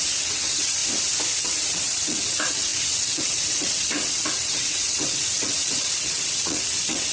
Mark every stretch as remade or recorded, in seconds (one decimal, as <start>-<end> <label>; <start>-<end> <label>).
0.0-0.8 remade; 0.8-1.4 recorded; 1.4-7.1 remade